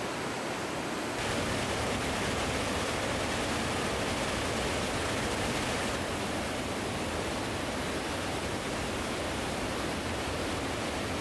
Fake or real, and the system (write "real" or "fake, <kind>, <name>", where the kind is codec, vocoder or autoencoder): real